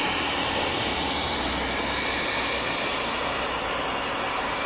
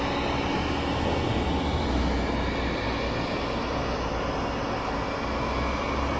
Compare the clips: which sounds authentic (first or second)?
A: second